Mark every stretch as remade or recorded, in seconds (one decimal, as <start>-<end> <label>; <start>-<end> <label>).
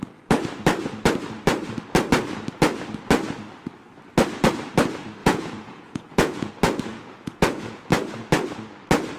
0.0-5.2 recorded; 5.2-6.5 remade; 6.5-6.9 recorded; 6.9-7.9 remade; 7.9-9.2 recorded